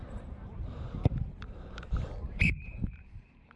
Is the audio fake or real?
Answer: fake